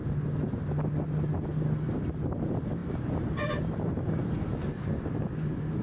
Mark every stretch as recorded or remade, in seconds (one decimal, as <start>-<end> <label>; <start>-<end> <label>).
0.0-5.8 recorded